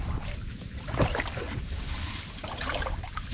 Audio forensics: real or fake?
fake